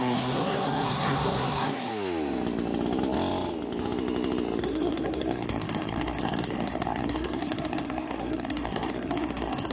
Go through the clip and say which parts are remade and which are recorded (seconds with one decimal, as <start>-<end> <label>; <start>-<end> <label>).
0.0-1.9 remade; 1.9-4.6 recorded; 4.6-9.7 remade